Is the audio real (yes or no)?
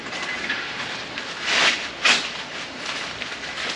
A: no